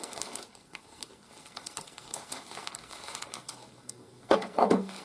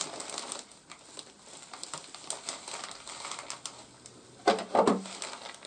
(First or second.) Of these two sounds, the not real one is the first